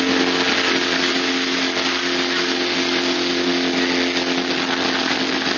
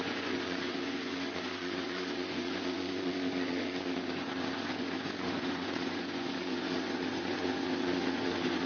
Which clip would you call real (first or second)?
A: first